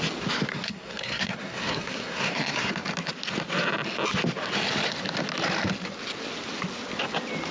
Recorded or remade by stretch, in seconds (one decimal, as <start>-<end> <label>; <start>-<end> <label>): 0.0-0.5 recorded; 0.5-2.7 remade; 2.7-7.5 recorded